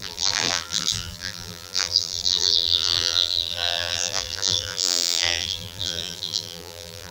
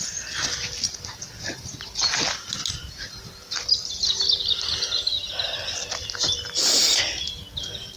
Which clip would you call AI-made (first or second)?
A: first